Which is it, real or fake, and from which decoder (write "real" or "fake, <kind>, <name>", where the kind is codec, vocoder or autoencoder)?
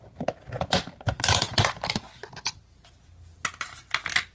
real